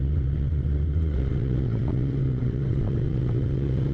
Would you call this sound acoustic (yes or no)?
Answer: no